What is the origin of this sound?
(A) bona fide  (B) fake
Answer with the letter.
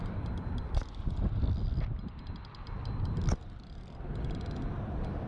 A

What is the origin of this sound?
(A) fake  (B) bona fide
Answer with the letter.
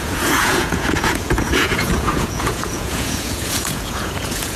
A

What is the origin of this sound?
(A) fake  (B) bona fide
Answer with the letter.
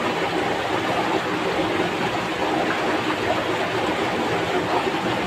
B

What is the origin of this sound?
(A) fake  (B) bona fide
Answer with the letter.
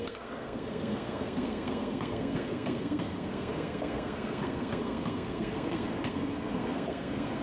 A